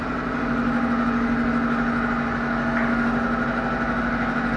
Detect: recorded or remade recorded